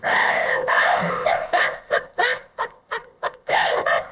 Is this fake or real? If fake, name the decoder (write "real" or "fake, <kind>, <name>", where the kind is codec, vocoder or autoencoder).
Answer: fake, codec, ZipCodec